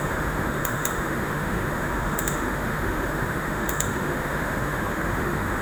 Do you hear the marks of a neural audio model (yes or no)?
yes